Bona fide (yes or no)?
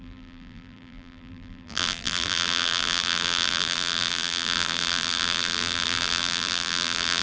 no